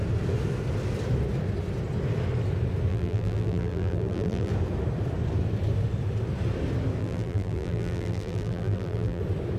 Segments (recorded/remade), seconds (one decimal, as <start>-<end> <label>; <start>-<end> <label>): 0.0-2.9 recorded; 2.9-4.5 remade; 4.5-7.0 recorded; 7.0-9.2 remade; 9.2-9.6 recorded